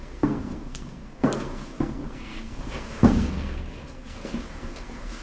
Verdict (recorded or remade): remade